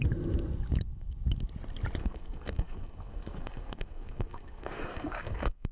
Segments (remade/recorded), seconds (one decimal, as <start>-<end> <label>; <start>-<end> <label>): 0.0-2.0 recorded; 2.0-5.7 remade